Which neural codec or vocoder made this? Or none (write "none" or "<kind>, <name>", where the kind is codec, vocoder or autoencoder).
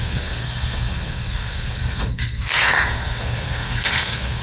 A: codec, SNAC